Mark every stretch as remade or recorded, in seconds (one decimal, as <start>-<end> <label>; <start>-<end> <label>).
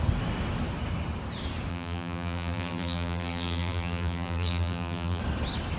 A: 0.0-1.7 recorded; 1.7-5.2 remade; 5.2-5.8 recorded